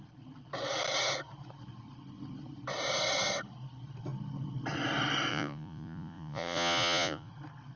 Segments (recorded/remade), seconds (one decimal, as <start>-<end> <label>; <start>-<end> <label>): 0.0-5.3 recorded; 5.3-7.3 remade; 7.3-7.8 recorded